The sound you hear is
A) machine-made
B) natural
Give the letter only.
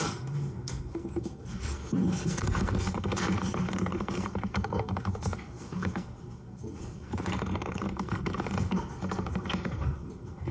A